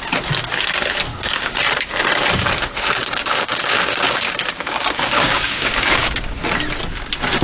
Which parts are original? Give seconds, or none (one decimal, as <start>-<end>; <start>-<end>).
0.0-1.1; 1.6-3.0; 6.4-7.4